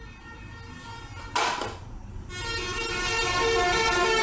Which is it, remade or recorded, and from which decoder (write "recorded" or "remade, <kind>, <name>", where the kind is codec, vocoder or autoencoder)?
recorded